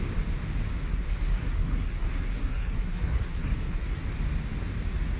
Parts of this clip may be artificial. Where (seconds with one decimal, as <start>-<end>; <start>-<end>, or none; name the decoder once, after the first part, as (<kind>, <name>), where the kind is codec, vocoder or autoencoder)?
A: 0.9-4.0 (codec, SNAC)